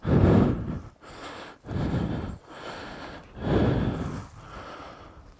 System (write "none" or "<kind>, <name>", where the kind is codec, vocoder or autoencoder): none